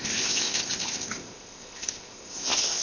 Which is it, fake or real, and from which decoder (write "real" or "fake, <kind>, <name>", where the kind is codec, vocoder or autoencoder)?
fake, codec, ZipCodec